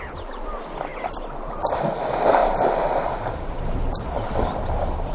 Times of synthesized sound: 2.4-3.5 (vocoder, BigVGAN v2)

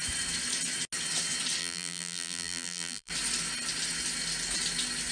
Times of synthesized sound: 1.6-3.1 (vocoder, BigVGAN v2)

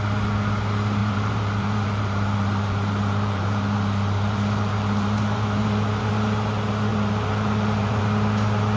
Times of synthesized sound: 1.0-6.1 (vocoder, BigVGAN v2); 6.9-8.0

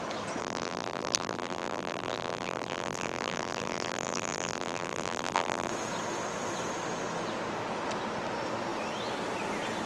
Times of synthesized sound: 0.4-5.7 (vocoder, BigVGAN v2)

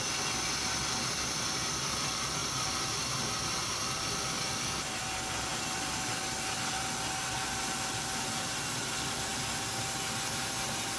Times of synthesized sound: 2.4-3.1 (vocoder, BigVGAN v2); 5.5-6.1

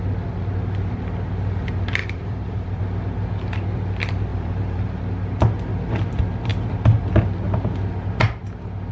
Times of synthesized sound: 2.0-2.8 (vocoder, BigVGAN v2); 4.3-5.0

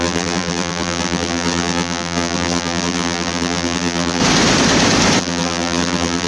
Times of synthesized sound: 0.0-4.2 (vocoder, BigVGAN v2); 5.2-6.3